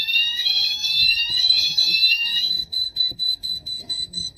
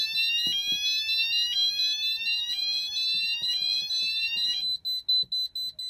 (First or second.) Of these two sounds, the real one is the second